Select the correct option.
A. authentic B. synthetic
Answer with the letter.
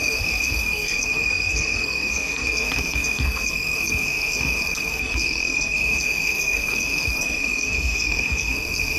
B